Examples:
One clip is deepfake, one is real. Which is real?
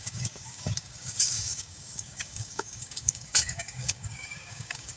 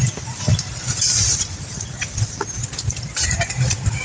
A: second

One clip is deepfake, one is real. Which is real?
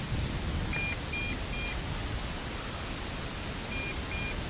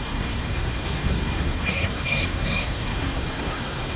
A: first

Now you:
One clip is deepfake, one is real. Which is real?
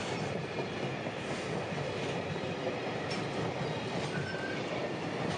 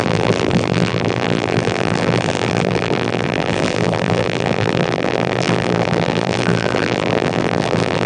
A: first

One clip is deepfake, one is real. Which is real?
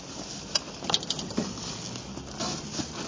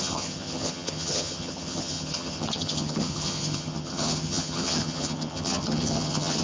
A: first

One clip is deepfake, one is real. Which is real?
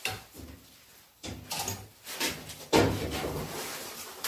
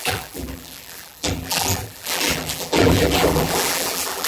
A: first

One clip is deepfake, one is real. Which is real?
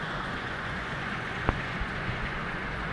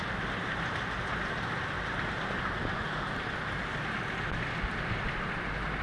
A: second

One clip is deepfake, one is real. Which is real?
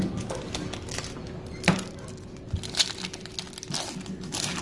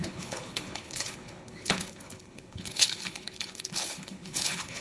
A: first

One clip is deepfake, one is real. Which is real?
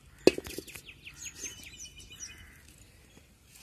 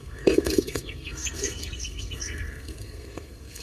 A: first